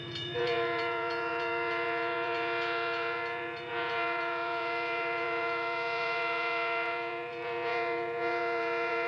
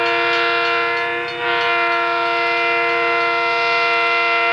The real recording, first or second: second